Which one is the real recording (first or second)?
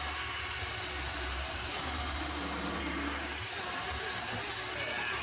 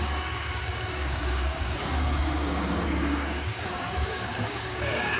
first